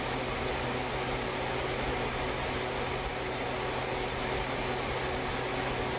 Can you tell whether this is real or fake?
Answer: real